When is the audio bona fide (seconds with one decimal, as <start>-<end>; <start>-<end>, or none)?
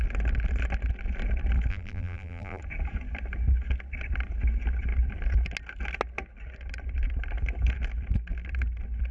0.0-1.7; 2.6-9.1